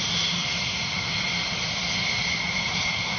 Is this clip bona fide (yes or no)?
yes